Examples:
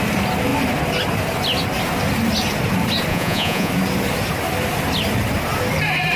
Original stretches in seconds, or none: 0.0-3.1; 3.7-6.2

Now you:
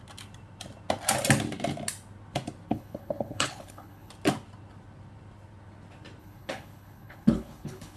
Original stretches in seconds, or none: 0.0-2.7; 4.1-6.2

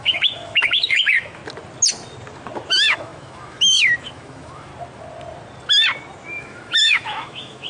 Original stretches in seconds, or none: 1.4-2.7; 4.7-6.4

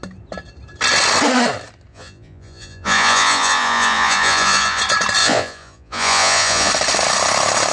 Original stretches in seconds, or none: 0.0-1.9; 4.8-5.2; 6.7-7.7

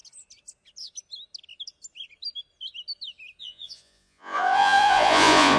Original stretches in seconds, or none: 0.0-3.4

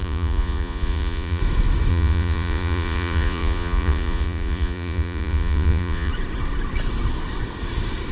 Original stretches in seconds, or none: 1.4-1.9; 6.1-8.1

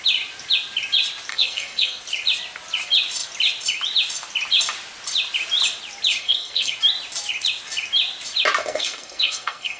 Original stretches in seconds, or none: 0.0-1.3; 2.0-6.2; 6.7-8.6

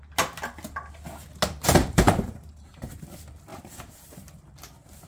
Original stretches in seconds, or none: 0.0-1.8; 2.9-3.5; 4.4-5.1